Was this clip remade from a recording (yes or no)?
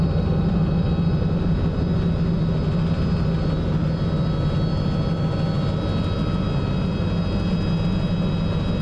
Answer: no